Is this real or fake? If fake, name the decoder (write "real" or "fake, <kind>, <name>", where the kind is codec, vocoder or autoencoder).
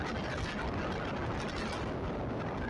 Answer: real